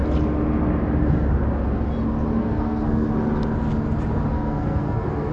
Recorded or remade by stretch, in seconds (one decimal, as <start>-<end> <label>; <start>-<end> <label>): 0.0-2.4 recorded; 2.4-3.1 remade; 3.1-4.3 recorded; 4.3-5.3 remade